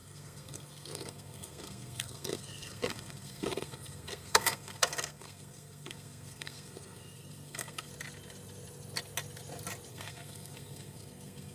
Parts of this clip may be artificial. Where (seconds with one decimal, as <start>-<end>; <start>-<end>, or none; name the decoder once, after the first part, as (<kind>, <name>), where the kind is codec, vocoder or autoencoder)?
0.0-7.9 (codec, SNAC); 9.9-11.5